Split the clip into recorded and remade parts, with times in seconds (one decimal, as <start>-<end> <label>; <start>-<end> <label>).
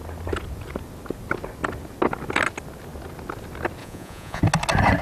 0.0-3.8 recorded; 3.8-4.4 remade; 4.4-5.0 recorded